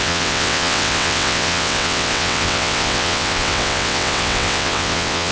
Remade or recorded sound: remade